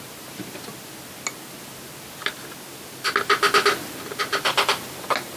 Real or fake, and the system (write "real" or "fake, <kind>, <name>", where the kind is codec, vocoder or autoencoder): real